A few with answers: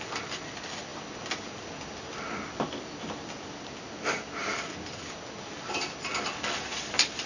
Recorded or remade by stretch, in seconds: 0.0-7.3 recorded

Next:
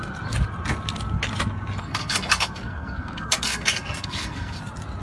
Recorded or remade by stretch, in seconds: 0.0-1.8 recorded; 1.8-4.6 remade; 4.6-5.0 recorded